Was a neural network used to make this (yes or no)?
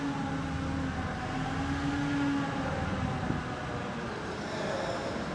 no